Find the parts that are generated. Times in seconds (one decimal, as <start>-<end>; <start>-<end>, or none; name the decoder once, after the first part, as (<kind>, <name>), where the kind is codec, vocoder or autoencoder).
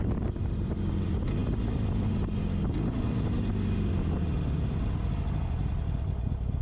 none